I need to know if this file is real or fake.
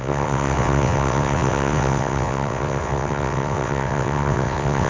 fake